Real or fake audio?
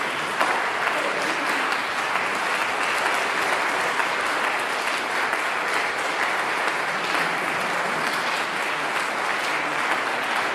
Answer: real